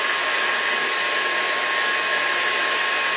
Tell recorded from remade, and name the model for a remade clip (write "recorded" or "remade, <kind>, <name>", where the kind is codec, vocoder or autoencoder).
remade, vocoder, BigVGAN v2